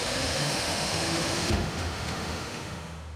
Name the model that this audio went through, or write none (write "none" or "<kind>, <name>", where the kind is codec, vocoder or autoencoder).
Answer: autoencoder, DAC-VAE